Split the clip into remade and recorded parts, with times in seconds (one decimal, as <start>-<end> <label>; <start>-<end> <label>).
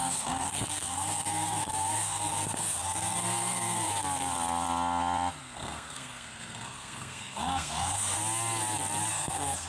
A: 0.0-3.9 remade; 3.9-5.4 recorded; 5.4-8.2 remade; 8.2-9.1 recorded; 9.1-9.7 remade